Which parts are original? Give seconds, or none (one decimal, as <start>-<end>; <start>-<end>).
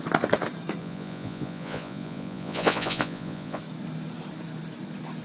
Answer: 0.0-0.8; 3.6-5.2